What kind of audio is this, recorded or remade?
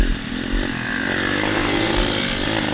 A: recorded